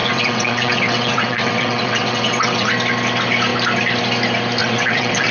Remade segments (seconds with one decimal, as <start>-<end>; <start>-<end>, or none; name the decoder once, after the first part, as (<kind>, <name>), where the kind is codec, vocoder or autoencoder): 0.0-2.7 (vocoder, WaveNeXt); 4.6-5.3